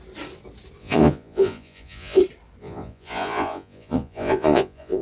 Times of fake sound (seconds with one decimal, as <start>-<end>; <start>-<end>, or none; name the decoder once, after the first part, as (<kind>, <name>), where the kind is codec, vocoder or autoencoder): 0.8-2.2 (vocoder, Vocos); 2.6-5.0